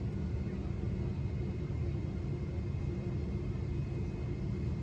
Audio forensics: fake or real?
real